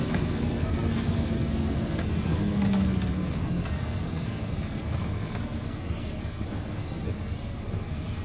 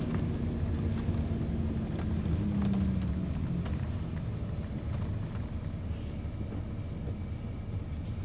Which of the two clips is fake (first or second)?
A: first